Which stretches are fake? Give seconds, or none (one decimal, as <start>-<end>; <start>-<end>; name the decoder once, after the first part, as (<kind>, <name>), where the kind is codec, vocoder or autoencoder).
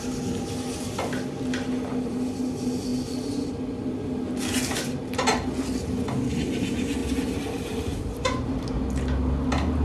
none